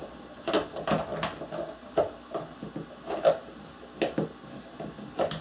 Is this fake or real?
real